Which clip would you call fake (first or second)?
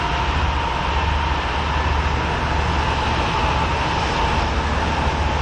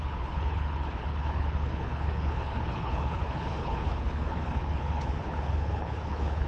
second